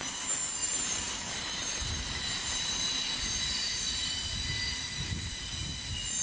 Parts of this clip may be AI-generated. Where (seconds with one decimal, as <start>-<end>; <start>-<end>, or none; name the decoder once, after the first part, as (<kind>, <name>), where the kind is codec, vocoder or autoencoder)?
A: 0.6-3.2 (vocoder, BigVGAN v2); 4.0-5.6